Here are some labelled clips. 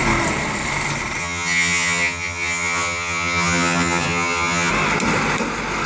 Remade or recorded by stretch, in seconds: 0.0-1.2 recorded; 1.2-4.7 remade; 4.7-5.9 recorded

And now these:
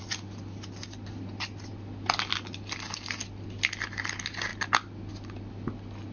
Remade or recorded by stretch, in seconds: 0.0-6.1 recorded

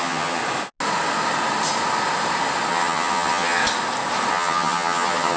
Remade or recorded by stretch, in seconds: 0.0-0.4 remade; 0.4-2.7 recorded; 2.7-3.6 remade; 3.6-4.3 recorded; 4.3-5.4 remade

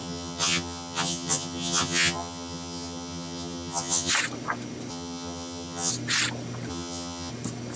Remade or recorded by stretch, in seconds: 0.0-4.1 remade; 4.1-4.9 recorded; 4.9-5.9 remade; 5.9-6.7 recorded; 6.7-7.3 remade; 7.3-7.8 recorded

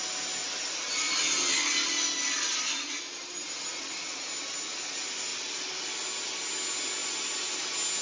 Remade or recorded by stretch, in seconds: 0.0-8.0 recorded

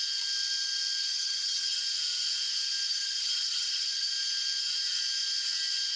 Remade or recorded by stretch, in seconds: 0.0-1.1 recorded; 1.1-1.8 remade; 1.8-2.9 recorded; 2.9-4.1 remade; 4.1-6.0 recorded

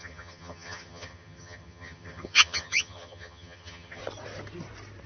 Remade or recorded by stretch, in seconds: 0.0-4.0 remade; 4.0-5.1 recorded

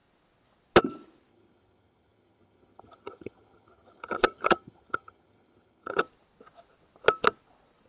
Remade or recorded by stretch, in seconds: 0.0-1.3 recorded; 1.3-6.0 remade; 6.0-7.9 recorded